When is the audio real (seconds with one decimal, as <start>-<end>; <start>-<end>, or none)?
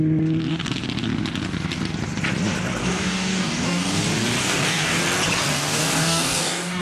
0.0-2.8; 4.0-4.4; 5.0-5.5